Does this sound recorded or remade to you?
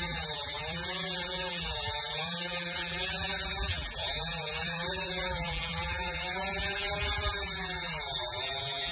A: remade